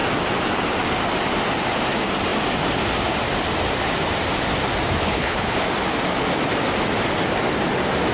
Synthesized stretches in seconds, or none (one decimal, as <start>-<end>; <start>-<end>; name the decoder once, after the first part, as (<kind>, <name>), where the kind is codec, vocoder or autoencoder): 5.0-5.6 (codec, HILCodec)